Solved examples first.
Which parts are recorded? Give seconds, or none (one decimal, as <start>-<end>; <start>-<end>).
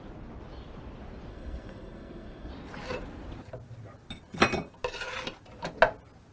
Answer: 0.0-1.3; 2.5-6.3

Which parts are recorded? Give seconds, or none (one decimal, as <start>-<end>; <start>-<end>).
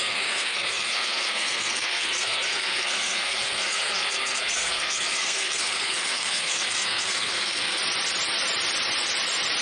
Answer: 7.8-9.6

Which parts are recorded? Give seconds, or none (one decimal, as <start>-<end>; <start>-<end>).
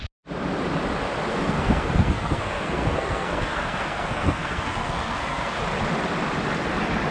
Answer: 0.0-1.3; 5.6-7.1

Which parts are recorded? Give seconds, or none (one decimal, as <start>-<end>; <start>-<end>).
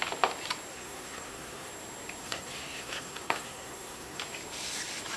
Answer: 0.0-0.7; 1.7-2.2; 4.2-5.2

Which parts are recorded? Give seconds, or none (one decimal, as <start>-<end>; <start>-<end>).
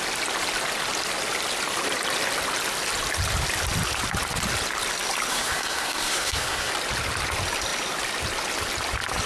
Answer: 0.0-5.3; 6.7-9.3